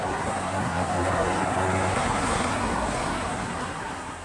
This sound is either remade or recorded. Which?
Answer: remade